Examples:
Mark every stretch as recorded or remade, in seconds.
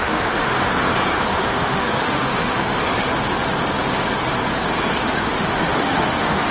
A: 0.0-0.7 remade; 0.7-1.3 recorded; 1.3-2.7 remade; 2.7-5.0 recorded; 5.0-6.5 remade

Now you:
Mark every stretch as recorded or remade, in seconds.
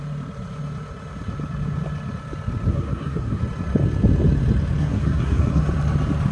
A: 0.0-2.7 recorded; 2.7-3.4 remade; 3.4-4.8 recorded; 4.8-5.6 remade; 5.6-6.3 recorded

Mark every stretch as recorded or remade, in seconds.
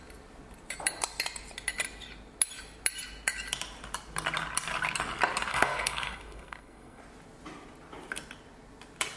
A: 0.0-5.5 recorded; 5.5-7.0 remade; 7.0-9.2 recorded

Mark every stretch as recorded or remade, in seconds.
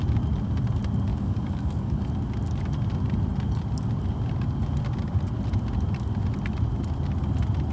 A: 0.0-1.1 recorded; 1.1-2.1 remade; 2.1-7.7 recorded